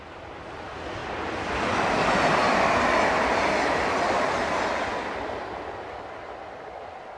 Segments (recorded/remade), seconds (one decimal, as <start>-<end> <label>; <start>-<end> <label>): 0.0-7.2 recorded